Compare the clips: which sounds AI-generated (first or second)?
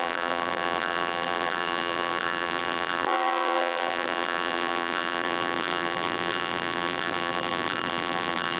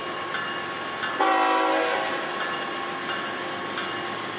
first